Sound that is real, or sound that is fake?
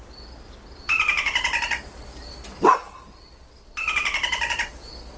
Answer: fake